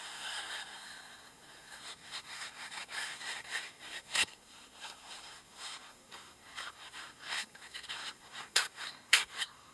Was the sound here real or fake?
fake